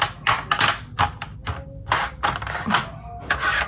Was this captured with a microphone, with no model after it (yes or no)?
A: yes